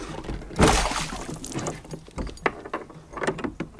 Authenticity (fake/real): real